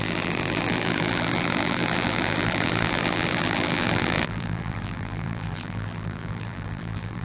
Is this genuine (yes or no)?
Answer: no